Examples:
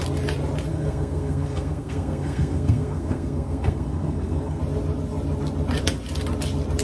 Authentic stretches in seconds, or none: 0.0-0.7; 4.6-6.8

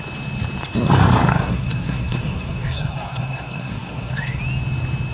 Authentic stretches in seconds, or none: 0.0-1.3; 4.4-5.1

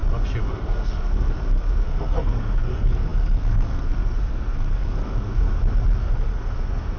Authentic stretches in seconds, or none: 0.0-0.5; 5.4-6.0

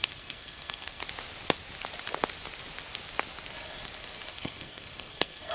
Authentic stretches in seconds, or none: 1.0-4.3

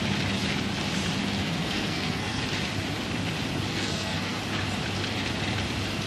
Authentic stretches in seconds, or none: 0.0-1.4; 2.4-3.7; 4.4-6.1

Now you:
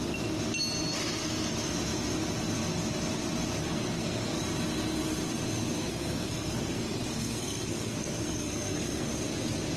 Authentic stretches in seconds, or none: 0.0-3.6; 4.4-5.9; 9.1-9.8

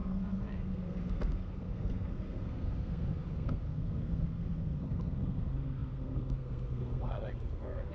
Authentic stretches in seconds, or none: none

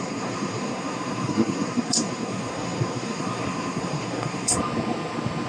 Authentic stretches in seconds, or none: 4.6-5.5